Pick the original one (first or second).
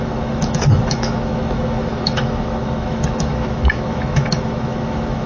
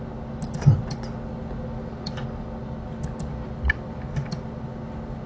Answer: second